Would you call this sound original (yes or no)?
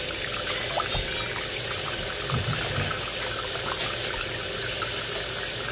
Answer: yes